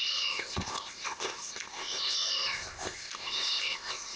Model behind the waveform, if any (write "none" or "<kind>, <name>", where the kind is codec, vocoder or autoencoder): codec, ZipCodec